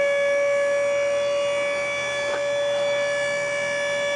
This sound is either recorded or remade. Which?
recorded